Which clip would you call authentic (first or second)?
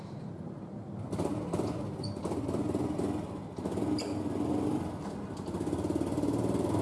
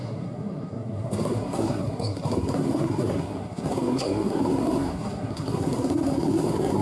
first